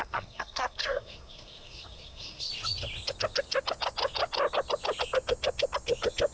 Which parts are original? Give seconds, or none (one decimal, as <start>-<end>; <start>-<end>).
2.5-6.3